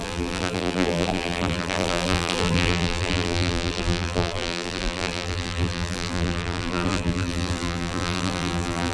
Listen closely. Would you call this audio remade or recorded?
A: remade